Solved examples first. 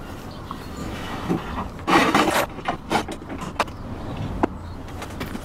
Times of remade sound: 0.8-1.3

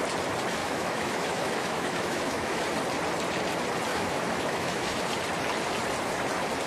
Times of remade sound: 0.6-2.6; 3.9-5.0

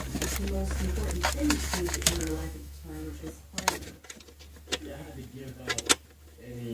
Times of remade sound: 1.7-3.1

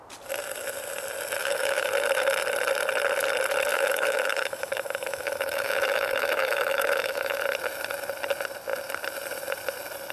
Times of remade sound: 1.4-1.9; 3.7-7.4

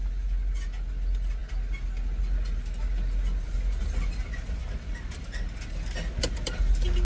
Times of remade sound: none